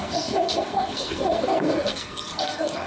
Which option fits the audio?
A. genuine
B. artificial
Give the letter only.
B